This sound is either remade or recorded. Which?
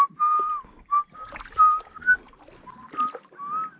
recorded